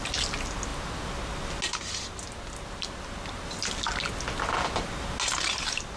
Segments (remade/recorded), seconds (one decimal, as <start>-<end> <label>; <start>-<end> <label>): 0.0-6.0 recorded